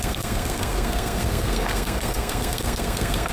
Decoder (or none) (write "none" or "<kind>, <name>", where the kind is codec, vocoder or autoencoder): codec, SNAC